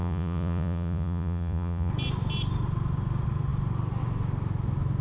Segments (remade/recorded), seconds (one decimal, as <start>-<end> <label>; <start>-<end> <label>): 0.0-1.9 remade; 1.9-5.0 recorded

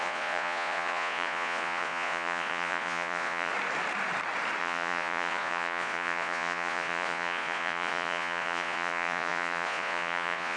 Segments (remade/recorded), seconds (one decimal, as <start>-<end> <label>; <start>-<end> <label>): 0.0-3.5 remade; 3.5-4.6 recorded; 4.6-10.6 remade

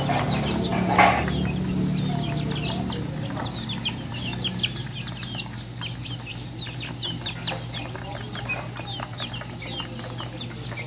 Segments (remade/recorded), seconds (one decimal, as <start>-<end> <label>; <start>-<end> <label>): 0.0-10.9 recorded

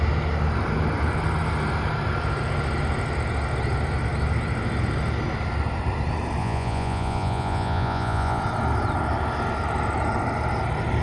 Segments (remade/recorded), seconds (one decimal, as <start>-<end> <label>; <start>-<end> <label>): 0.0-6.4 recorded; 6.4-8.4 remade; 8.4-11.0 recorded

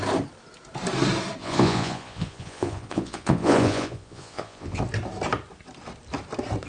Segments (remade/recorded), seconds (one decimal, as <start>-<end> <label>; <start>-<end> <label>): 0.0-1.4 recorded; 1.4-4.8 remade; 4.8-6.7 recorded

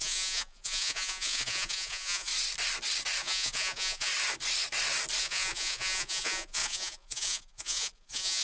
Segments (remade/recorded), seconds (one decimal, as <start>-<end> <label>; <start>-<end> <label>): 0.0-2.3 remade; 2.3-3.2 recorded; 3.2-4.1 remade; 4.1-5.2 recorded; 5.2-8.4 remade

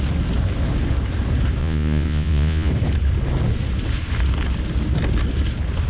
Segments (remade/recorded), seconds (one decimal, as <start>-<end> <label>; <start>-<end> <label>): 0.0-1.6 recorded; 1.6-2.7 remade; 2.7-5.9 recorded

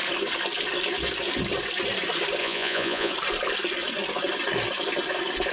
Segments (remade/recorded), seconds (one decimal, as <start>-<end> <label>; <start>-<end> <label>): 0.0-2.4 recorded; 2.4-3.1 remade; 3.1-5.5 recorded